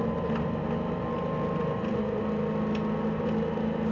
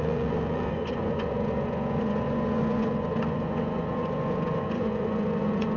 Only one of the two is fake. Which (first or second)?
second